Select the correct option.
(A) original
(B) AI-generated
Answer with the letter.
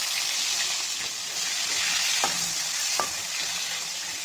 A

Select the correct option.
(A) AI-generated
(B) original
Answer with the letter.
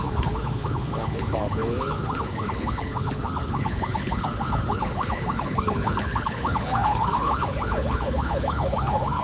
A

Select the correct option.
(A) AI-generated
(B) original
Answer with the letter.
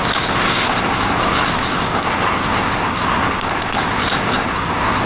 A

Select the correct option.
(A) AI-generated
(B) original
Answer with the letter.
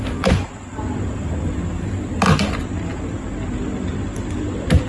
B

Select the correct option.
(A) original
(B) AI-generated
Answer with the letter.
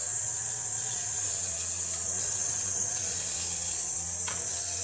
B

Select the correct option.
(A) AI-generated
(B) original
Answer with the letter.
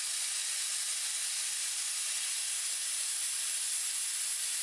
B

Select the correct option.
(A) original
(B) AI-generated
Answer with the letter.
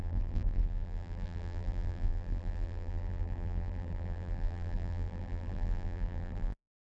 B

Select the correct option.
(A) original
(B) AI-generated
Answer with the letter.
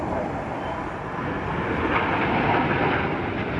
A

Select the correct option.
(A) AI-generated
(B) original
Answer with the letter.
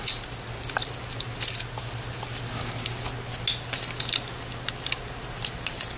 B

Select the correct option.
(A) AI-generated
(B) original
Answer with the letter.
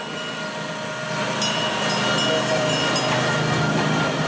B